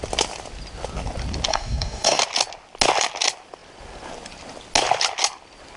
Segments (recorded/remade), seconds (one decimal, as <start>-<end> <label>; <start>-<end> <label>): 0.0-1.5 recorded; 1.5-2.2 remade; 2.2-5.8 recorded